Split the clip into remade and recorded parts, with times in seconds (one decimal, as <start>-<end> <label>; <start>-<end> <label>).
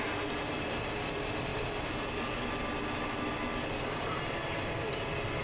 0.0-5.4 recorded